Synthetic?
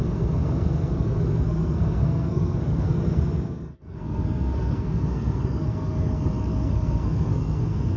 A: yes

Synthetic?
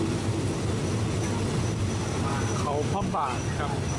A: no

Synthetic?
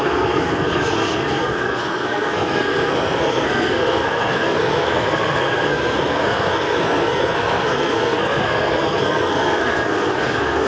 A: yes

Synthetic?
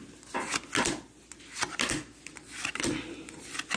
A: no